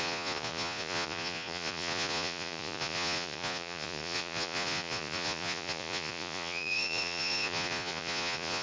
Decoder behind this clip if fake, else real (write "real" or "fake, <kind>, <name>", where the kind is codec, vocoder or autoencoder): fake, vocoder, Vocos